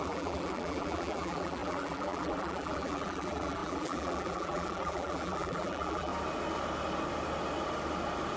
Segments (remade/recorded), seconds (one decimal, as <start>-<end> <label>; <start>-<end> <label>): 0.0-6.1 remade; 6.1-8.4 recorded